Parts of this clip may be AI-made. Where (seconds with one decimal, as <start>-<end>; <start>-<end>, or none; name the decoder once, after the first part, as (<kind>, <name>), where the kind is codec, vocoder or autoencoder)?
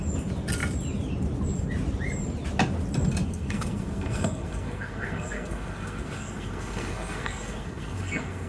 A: 3.3-8.5 (codec, SNAC)